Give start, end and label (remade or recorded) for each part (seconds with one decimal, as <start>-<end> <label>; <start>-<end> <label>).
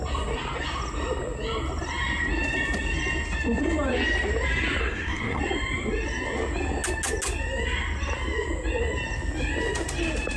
0.0-4.8 recorded; 4.8-5.4 remade; 5.4-10.4 recorded